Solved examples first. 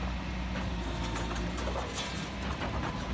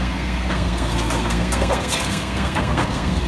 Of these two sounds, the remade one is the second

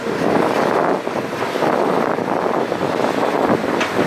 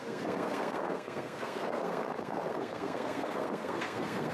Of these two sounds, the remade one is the second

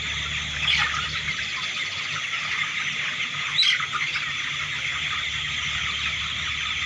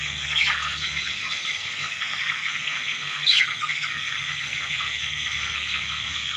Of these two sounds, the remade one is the second